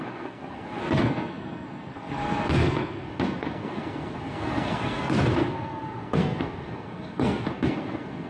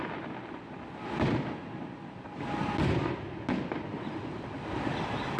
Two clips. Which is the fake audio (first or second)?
first